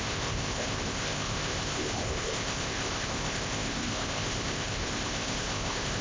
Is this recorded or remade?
remade